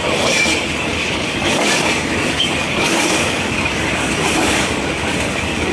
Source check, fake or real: fake